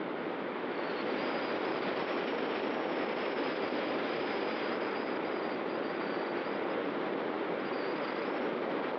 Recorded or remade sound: recorded